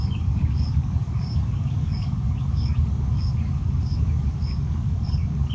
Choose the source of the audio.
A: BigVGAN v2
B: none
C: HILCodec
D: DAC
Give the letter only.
D